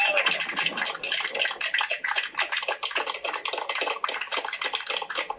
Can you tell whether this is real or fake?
real